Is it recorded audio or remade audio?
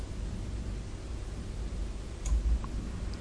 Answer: recorded